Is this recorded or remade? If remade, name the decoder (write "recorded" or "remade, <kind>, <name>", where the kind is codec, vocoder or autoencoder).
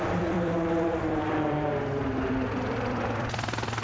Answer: remade, vocoder, BigVGAN v2